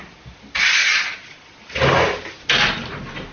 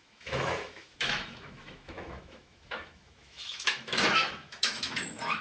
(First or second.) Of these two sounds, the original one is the first